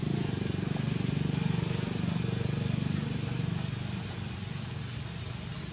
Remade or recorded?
recorded